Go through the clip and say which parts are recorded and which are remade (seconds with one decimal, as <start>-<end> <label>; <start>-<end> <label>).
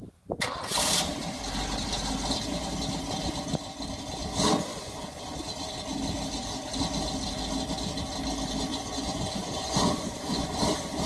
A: 0.0-4.7 recorded; 4.7-5.2 remade; 5.2-8.7 recorded; 8.7-10.6 remade; 10.6-11.1 recorded